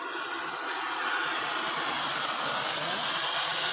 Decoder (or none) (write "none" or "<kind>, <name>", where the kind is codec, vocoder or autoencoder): none